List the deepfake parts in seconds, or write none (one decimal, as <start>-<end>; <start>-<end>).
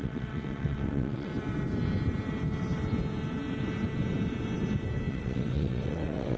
0.0-1.3; 5.1-6.4